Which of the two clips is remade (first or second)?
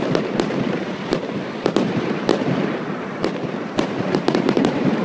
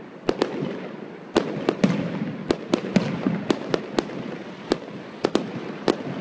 first